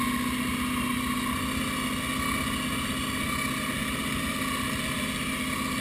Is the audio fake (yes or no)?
no